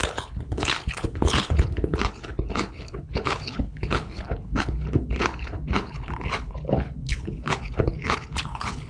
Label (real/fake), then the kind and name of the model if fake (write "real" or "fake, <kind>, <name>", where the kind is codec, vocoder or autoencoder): fake, codec, HILCodec